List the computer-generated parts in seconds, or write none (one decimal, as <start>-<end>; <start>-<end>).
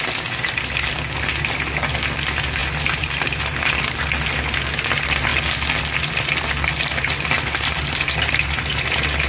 2.6-4.0